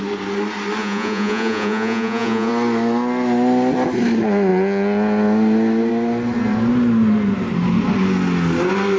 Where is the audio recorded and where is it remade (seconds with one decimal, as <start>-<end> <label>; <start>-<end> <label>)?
0.0-0.8 recorded; 0.8-2.5 remade; 2.5-9.0 recorded